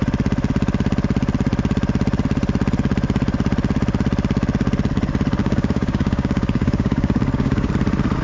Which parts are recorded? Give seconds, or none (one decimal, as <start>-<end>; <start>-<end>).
0.0-5.4; 7.7-8.2